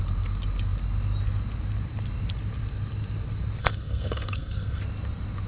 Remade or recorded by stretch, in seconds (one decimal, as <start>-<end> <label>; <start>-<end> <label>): 0.0-3.6 recorded; 3.6-4.8 remade; 4.8-5.5 recorded